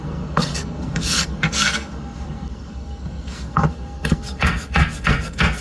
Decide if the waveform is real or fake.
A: fake